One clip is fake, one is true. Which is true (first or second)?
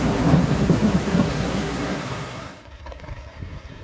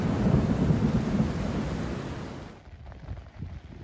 second